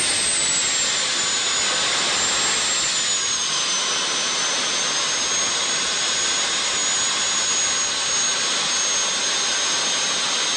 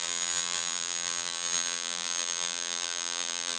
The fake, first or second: second